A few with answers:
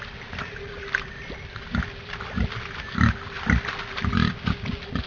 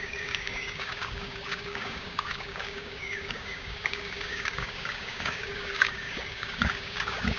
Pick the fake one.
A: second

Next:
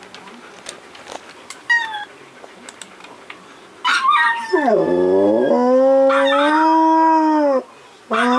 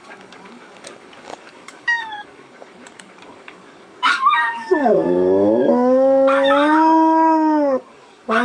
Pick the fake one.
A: second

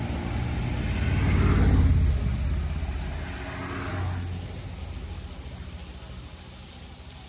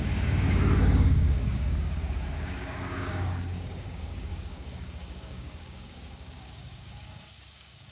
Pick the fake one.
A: second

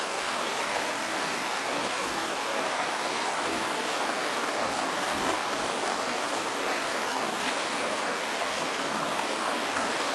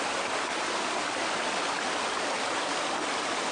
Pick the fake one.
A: first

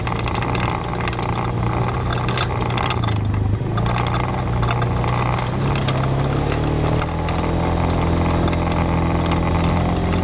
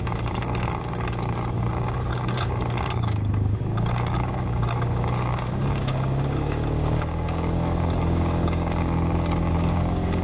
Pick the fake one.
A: second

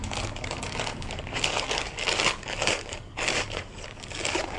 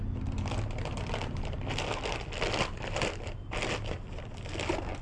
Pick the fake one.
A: first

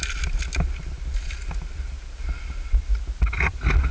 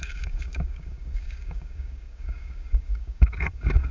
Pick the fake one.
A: second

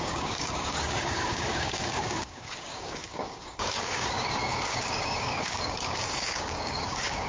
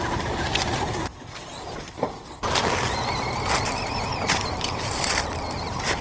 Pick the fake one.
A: first